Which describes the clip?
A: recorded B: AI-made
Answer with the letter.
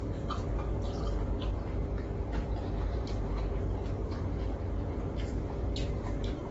A